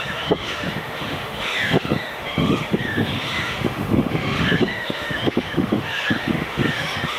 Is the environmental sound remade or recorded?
remade